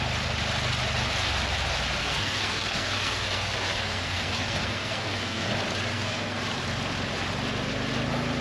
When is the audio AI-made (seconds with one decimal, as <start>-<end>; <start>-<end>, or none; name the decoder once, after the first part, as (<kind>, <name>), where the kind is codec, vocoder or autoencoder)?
2.0-5.5 (codec, SNAC); 5.9-6.4